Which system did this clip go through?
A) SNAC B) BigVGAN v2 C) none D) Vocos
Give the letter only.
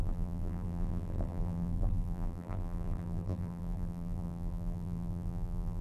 B